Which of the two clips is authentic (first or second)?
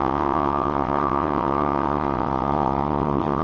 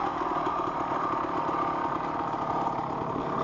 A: second